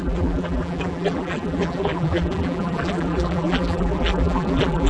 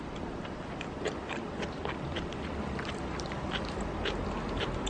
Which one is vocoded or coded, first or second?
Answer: first